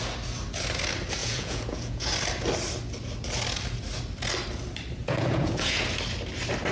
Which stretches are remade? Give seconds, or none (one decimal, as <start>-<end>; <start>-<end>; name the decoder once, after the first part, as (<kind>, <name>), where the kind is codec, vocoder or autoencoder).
1.2-2.1 (vocoder, Vocos); 5.0-5.8